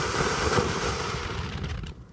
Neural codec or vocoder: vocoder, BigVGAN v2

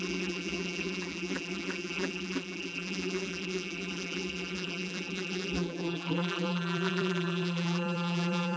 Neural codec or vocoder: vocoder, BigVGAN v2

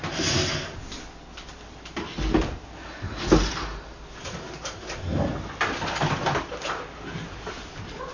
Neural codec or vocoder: none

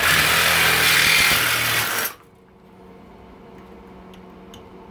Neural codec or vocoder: none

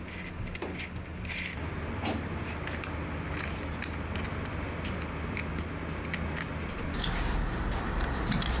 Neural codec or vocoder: none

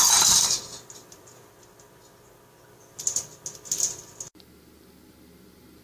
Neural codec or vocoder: none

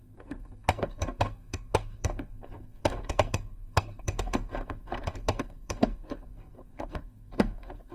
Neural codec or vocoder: codec, SNAC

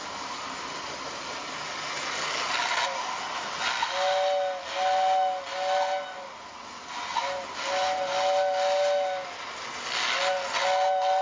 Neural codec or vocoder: none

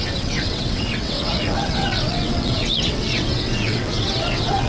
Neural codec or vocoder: vocoder, WaveNeXt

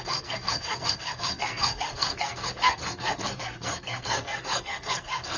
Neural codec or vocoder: codec, SNAC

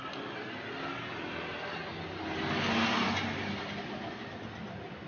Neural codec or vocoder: none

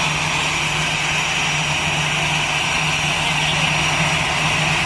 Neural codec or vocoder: none